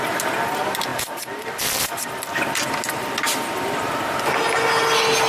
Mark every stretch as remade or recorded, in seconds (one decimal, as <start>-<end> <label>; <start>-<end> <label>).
0.0-5.3 recorded